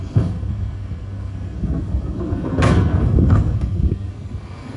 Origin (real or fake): fake